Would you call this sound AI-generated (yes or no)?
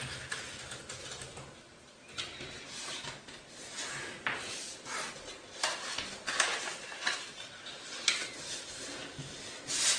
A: no